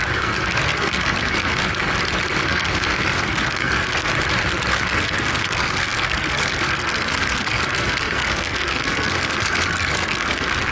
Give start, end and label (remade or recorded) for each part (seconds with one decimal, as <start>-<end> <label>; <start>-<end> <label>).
0.0-1.6 remade; 1.6-2.4 recorded; 2.4-4.1 remade; 4.1-4.7 recorded; 4.7-10.7 remade